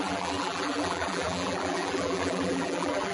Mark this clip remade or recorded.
remade